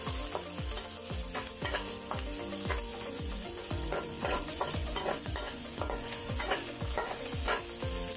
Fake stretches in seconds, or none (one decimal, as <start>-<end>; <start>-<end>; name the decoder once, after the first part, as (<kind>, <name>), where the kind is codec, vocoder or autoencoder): 2.9-7.6 (vocoder, Vocos)